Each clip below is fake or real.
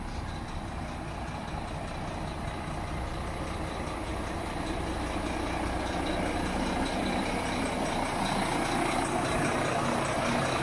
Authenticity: real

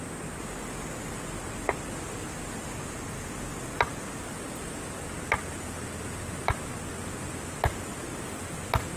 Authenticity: real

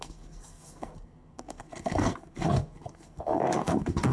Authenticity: fake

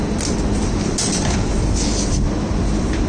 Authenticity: fake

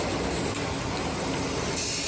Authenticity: real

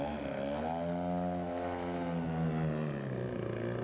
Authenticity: real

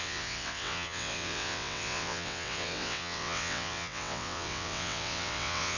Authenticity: fake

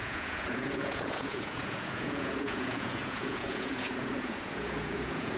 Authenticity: fake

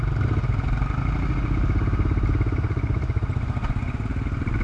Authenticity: real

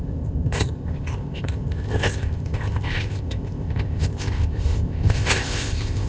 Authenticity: fake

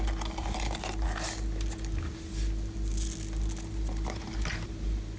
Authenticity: real